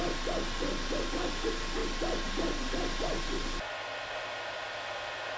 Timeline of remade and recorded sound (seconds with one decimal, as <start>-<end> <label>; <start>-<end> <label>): 0.0-5.4 recorded